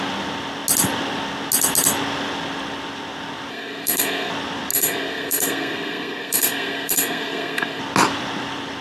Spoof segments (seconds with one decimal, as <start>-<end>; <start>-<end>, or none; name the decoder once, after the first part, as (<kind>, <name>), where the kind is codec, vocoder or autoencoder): 3.5-4.3 (codec, SNAC); 4.7-7.8